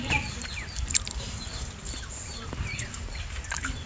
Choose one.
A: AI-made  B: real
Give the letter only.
A